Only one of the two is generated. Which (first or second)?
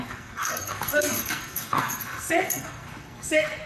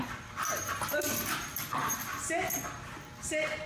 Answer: first